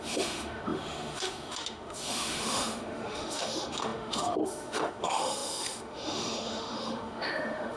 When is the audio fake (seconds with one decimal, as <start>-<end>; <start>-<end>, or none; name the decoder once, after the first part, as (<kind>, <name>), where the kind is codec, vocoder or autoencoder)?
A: 0.0-7.8 (autoencoder, DAC-VAE)